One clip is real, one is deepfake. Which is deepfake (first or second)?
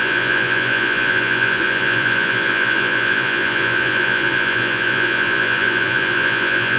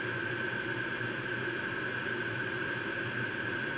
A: first